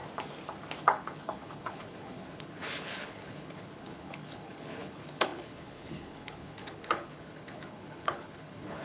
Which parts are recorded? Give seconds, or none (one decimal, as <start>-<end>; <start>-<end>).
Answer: 0.0-0.8